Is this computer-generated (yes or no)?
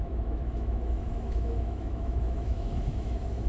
yes